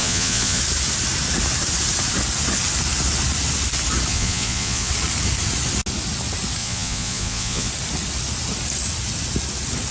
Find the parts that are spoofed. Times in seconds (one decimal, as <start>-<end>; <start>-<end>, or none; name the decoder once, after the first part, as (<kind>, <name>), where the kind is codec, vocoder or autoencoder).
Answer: 0.0-0.6 (vocoder, Vocos); 4.1-4.9; 6.6-7.7